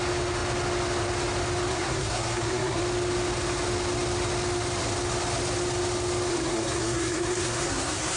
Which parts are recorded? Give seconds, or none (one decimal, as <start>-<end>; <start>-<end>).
0.0-1.7; 2.8-6.3